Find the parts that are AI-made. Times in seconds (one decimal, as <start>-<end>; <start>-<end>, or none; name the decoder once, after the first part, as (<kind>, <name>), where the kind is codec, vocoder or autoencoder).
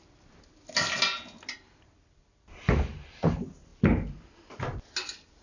none